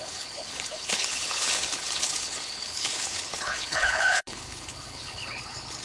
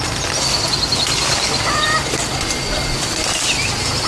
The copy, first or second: first